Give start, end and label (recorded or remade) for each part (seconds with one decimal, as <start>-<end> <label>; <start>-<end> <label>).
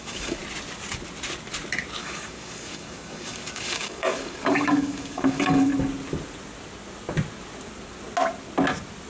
0.0-0.4 remade; 0.4-2.0 recorded; 2.0-5.7 remade; 5.7-9.1 recorded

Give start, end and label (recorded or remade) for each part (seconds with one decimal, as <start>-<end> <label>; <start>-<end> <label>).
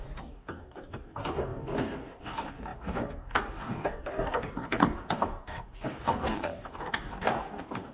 0.0-7.9 remade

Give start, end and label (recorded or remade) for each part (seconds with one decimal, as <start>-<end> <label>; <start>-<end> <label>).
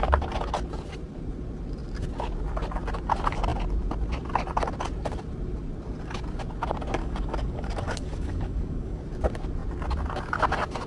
0.0-7.0 recorded; 7.0-9.0 remade; 9.0-10.9 recorded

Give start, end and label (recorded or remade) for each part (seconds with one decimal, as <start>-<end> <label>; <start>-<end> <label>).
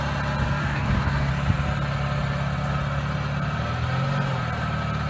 0.0-0.6 recorded; 0.6-1.3 remade; 1.3-5.1 recorded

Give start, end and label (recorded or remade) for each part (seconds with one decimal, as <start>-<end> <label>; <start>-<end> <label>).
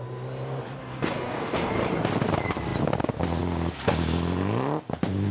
0.0-0.8 recorded; 0.8-1.7 remade; 1.7-5.3 recorded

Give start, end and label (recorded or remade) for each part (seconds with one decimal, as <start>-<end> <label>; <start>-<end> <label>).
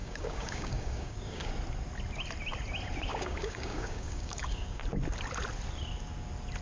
0.0-1.5 remade; 1.5-3.1 recorded; 3.1-4.8 remade; 4.8-6.6 recorded